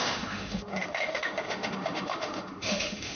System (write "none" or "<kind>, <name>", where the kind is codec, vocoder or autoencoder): autoencoder, DAC-VAE